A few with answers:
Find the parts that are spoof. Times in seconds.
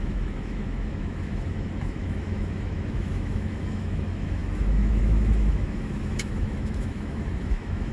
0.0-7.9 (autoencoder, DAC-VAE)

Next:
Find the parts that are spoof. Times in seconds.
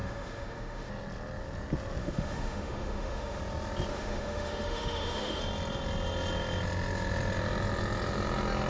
0.0-0.9 (autoencoder, DAC-VAE); 2.0-3.4; 3.9-5.4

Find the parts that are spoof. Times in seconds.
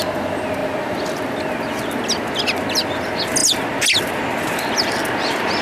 none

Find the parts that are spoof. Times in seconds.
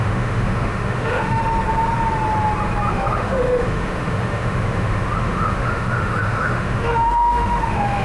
0.0-1.4 (autoencoder, DAC-VAE); 2.9-8.0